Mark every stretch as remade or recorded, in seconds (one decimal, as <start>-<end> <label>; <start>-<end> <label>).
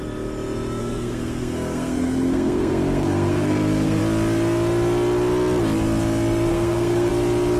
0.0-0.8 recorded; 0.8-4.0 remade; 4.0-6.5 recorded; 6.5-7.1 remade; 7.1-7.6 recorded